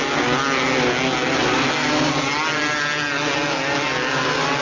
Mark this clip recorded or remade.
recorded